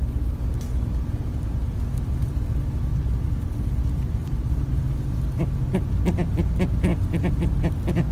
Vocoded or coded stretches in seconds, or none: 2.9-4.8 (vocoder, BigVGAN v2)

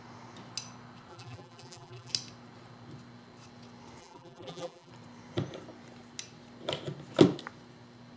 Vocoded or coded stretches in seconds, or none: 1.1-2.1 (vocoder, BigVGAN v2); 4.0-4.9

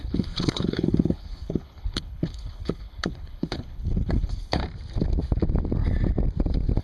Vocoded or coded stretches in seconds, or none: 0.0-4.6 (codec, HILCodec)